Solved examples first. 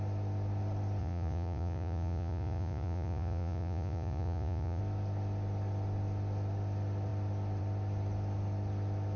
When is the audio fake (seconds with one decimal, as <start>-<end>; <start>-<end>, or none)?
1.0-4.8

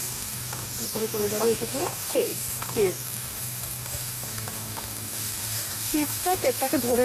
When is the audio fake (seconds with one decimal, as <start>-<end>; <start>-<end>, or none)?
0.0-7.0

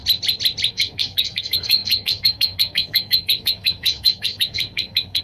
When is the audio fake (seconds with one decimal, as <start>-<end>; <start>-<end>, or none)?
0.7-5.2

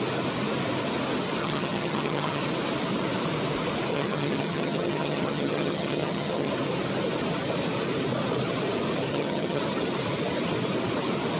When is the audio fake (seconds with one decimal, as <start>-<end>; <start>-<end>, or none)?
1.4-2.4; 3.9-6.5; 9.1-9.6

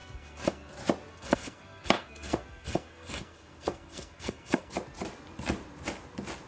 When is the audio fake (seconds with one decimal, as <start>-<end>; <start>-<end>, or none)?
0.0-0.7; 1.1-4.7

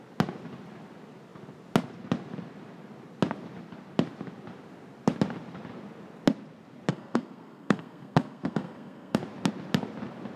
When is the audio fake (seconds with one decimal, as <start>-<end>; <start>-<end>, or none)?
6.9-9.2